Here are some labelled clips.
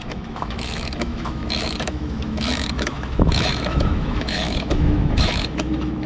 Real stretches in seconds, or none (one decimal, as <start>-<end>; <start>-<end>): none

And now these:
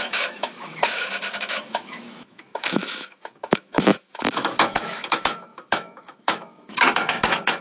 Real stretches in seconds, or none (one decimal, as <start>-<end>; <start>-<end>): none

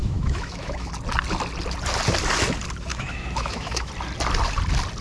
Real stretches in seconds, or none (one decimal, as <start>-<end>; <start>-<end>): 0.9-2.9; 3.9-5.0

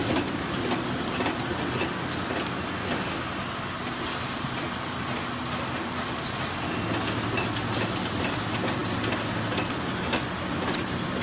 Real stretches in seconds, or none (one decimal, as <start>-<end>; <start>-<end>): 0.0-11.2

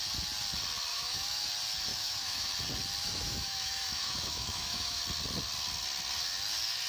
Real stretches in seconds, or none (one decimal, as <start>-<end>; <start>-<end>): 0.0-0.9; 1.5-1.9; 2.5-3.0; 5.0-6.9